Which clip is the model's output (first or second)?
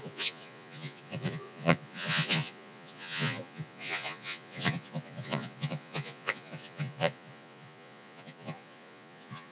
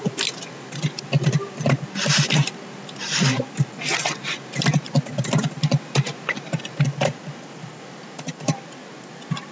first